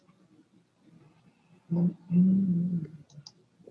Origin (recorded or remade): recorded